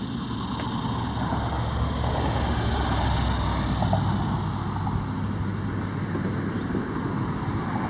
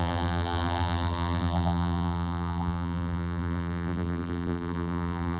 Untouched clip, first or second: first